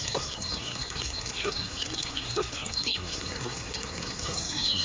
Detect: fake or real fake